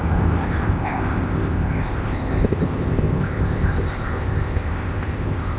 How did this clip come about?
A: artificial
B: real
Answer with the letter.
A